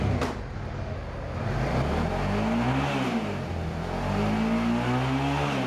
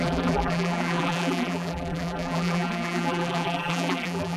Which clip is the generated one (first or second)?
second